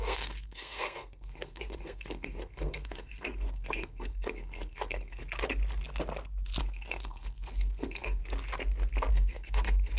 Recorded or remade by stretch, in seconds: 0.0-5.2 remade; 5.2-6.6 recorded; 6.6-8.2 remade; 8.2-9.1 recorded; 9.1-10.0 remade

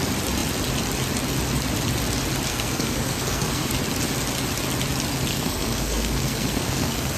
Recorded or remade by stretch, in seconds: 0.0-2.5 recorded; 2.5-3.7 remade; 3.7-5.3 recorded; 5.3-7.2 remade

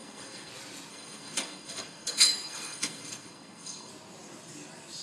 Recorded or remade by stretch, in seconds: 0.0-0.5 remade; 0.5-0.9 recorded; 0.9-3.9 remade; 3.9-5.0 recorded

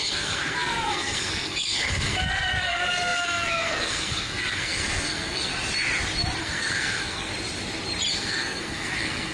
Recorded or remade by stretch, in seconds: 0.0-5.5 remade; 5.5-6.4 recorded; 6.4-7.3 remade; 7.3-8.1 recorded; 8.1-9.3 remade

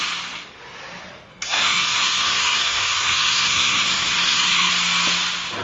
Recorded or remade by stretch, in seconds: 0.0-1.3 recorded; 1.3-4.7 remade; 4.7-5.6 recorded